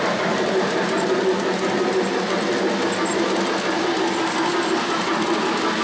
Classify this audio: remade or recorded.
recorded